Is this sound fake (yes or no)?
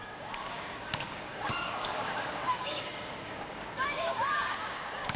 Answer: yes